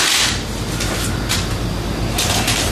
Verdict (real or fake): real